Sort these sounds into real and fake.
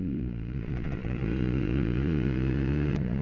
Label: fake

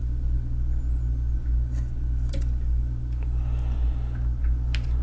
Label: real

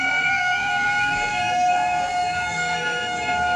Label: fake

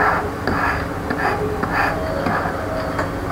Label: real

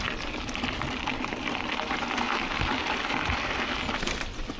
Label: real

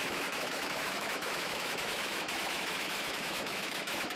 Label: fake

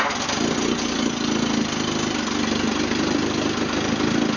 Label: real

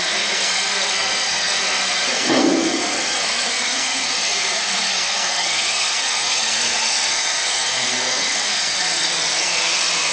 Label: fake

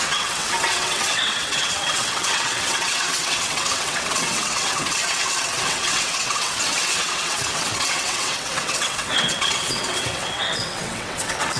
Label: fake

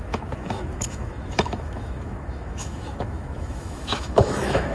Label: fake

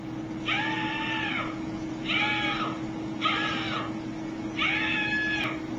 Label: real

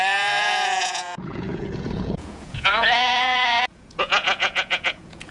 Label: fake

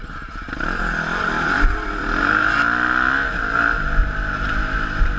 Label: real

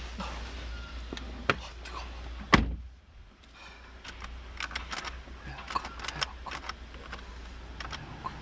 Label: real